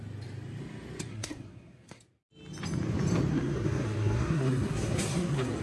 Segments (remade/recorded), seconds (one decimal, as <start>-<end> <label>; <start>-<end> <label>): 0.0-1.1 recorded; 1.1-2.0 remade; 2.0-3.3 recorded; 3.3-5.6 remade